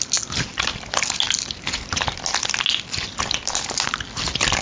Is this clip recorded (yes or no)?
yes